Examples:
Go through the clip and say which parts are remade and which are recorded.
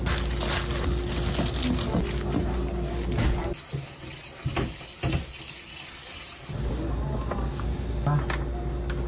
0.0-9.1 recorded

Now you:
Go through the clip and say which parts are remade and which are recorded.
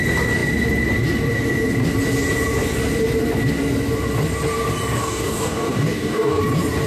0.0-5.0 recorded; 5.0-6.4 remade; 6.4-6.9 recorded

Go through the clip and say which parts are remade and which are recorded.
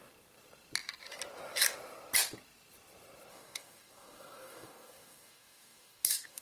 0.0-3.3 recorded; 3.3-6.4 remade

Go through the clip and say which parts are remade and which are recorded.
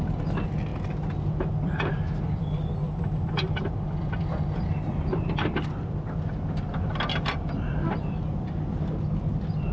0.0-9.7 recorded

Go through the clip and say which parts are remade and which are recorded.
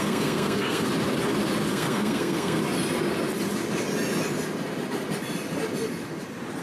0.0-0.9 remade; 0.9-1.7 recorded; 1.7-2.6 remade; 2.6-6.6 recorded